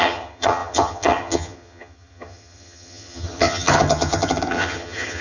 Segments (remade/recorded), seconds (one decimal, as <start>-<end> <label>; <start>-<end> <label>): 0.0-5.2 remade